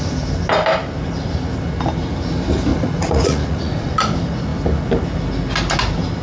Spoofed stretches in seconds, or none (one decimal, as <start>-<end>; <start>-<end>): 2.7-3.9